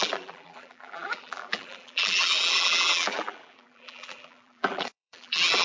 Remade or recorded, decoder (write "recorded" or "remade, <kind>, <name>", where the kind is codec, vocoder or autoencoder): remade, vocoder, BigVGAN v2